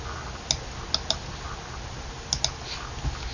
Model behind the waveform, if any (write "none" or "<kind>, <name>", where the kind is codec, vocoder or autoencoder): none